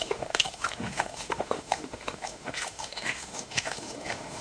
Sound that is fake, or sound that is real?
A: fake